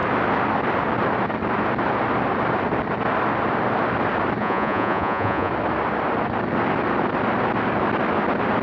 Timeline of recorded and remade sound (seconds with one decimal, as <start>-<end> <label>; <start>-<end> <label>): 0.0-4.4 recorded; 4.4-5.5 remade; 5.5-8.6 recorded